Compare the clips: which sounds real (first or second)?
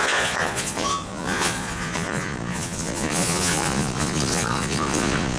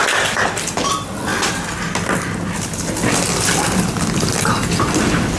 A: second